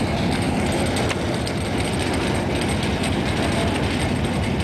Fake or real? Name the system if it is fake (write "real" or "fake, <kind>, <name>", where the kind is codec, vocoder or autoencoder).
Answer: real